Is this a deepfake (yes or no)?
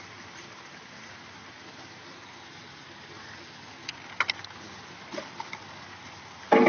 no